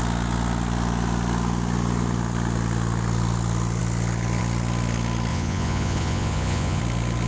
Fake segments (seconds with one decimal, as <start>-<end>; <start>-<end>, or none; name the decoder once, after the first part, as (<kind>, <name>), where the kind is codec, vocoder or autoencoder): 5.3-6.8 (vocoder, Vocos)